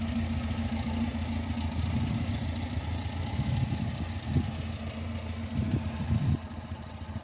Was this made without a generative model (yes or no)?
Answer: yes